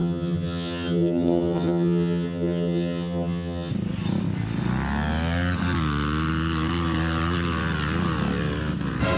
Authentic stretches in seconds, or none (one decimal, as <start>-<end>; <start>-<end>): 3.7-9.2